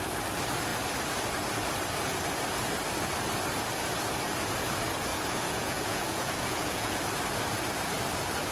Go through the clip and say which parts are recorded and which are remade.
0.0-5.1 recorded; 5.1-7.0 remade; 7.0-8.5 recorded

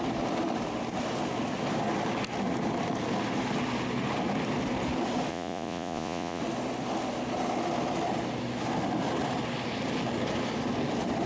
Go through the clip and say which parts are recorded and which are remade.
0.0-5.3 recorded; 5.3-6.4 remade; 6.4-11.3 recorded